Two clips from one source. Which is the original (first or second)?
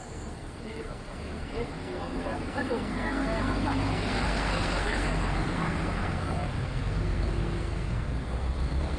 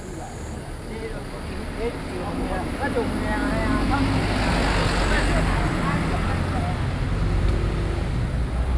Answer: second